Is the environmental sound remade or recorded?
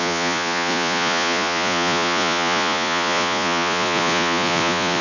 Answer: remade